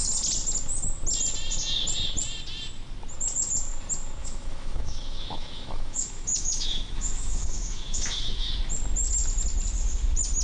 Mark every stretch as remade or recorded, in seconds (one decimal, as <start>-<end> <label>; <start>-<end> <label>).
0.0-4.2 recorded; 4.2-8.5 remade; 8.5-10.4 recorded